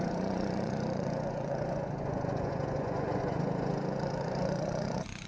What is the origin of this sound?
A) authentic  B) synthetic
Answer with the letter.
B